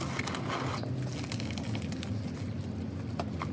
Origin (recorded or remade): recorded